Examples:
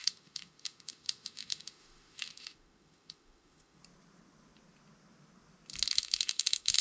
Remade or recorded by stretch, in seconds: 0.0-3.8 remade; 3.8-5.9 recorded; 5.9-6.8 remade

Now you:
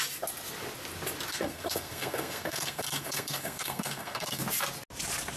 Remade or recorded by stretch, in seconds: 0.0-1.3 recorded; 1.3-4.4 remade; 4.4-5.4 recorded